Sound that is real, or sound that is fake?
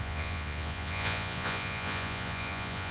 fake